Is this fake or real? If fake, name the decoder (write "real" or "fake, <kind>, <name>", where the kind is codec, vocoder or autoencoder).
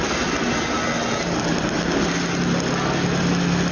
real